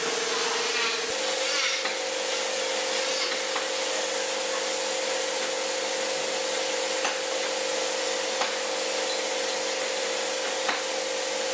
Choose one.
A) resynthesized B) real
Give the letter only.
B